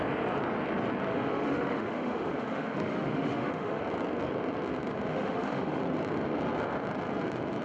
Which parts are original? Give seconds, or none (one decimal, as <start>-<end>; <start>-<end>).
0.0-1.1; 3.8-5.1; 5.8-7.6